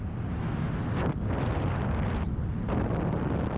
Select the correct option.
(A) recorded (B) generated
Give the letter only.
A